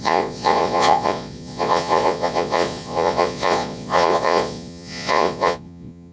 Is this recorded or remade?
remade